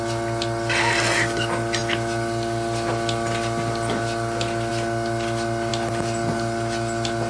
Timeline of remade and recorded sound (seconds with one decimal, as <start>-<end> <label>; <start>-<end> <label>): 0.0-7.3 recorded